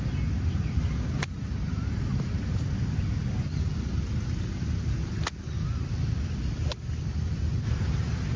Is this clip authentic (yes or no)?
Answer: yes